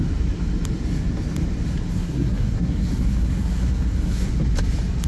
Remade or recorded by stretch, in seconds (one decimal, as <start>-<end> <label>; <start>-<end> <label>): 0.0-1.9 recorded; 1.9-4.3 remade; 4.3-5.1 recorded